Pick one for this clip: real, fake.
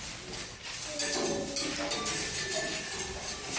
real